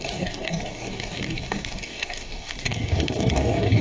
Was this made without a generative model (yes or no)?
no